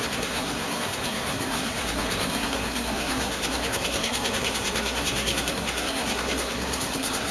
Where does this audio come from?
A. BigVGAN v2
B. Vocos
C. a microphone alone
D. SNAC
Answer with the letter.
D